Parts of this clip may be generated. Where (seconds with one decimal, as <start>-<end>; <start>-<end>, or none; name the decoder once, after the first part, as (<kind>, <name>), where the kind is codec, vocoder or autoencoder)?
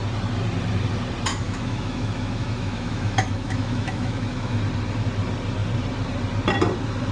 1.3-4.6 (autoencoder, DAC-VAE)